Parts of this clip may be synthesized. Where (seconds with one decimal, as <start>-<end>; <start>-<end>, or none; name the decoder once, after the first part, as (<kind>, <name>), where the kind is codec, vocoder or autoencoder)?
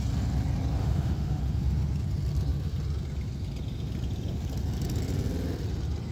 0.8-1.4 (autoencoder, DAC-VAE)